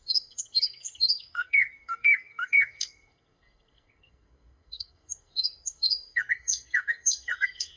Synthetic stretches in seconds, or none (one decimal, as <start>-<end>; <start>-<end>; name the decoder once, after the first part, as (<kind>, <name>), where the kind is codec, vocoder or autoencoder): 0.0-7.8 (codec, SNAC)